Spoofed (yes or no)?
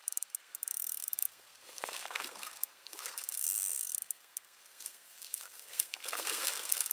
yes